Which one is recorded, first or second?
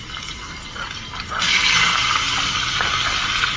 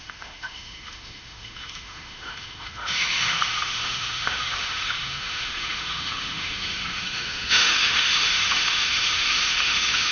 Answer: first